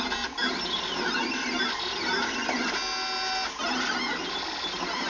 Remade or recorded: recorded